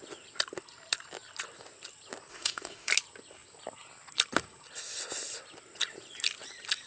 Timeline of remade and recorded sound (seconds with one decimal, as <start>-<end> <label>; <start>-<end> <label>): 0.0-2.3 recorded; 2.3-2.9 remade; 2.9-6.9 recorded